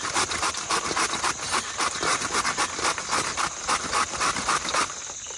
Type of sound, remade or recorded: recorded